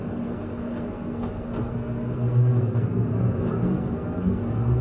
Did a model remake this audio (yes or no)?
yes